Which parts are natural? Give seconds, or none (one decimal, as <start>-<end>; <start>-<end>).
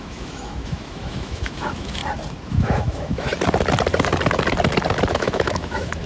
2.0-2.5; 3.3-5.1